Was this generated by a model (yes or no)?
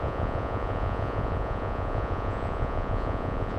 yes